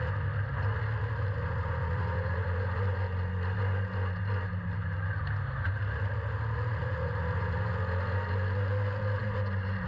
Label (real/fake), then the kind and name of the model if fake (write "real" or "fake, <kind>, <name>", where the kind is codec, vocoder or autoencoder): real